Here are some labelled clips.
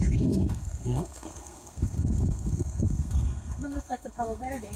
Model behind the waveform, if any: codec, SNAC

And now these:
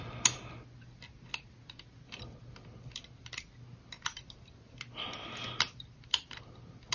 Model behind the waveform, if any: none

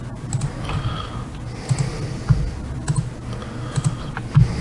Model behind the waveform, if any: none